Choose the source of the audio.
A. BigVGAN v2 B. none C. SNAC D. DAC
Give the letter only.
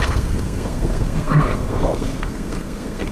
C